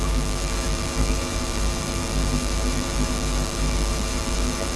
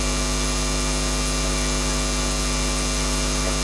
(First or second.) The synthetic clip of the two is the first